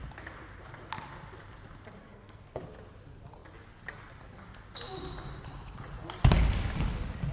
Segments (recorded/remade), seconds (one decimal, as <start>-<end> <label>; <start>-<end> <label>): 0.0-2.0 recorded; 2.0-2.6 remade; 2.6-7.3 recorded